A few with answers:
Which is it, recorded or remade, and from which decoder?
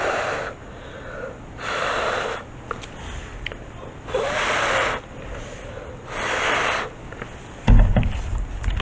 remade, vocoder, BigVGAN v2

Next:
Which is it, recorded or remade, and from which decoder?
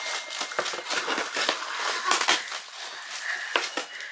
recorded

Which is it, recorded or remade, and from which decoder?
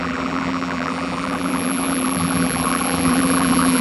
remade, vocoder, BigVGAN v2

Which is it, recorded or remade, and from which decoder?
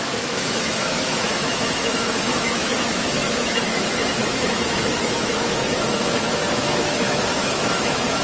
remade, autoencoder, DAC-VAE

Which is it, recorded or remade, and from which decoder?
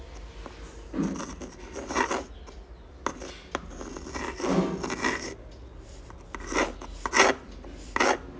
recorded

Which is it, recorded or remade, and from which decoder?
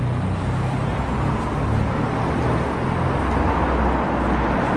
recorded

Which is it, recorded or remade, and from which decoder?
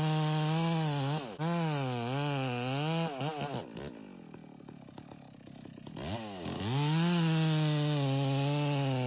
recorded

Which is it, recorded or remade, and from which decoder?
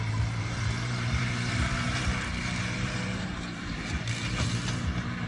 remade, vocoder, BigVGAN v2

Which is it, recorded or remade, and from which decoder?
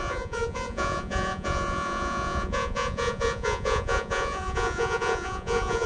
remade, vocoder, Vocos